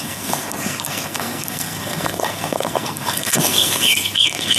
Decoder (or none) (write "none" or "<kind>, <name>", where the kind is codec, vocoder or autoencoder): codec, SNAC